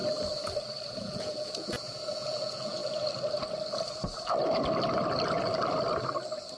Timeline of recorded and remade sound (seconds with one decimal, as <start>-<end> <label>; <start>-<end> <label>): 0.0-1.0 recorded; 1.0-2.8 remade; 2.8-6.6 recorded